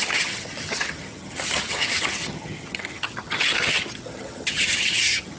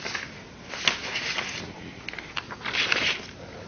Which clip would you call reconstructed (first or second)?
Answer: first